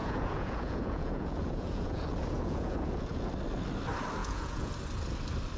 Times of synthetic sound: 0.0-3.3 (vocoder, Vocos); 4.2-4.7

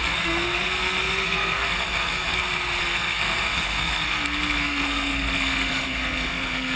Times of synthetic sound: 0.0-2.4 (codec, SNAC); 2.8-6.8

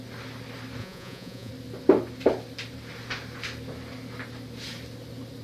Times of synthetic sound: 0.8-1.5 (vocoder, Vocos)